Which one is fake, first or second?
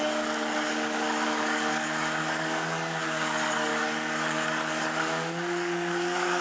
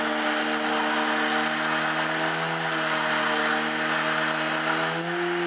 first